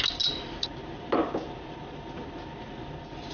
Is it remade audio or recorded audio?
recorded